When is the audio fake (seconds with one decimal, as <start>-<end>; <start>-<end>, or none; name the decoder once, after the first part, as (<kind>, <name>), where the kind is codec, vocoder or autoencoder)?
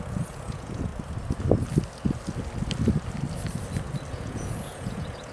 0.0-0.9 (vocoder, Vocos); 4.1-5.3